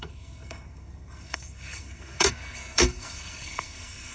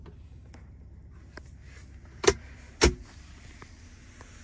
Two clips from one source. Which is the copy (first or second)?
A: first